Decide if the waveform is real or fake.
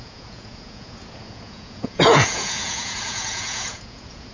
fake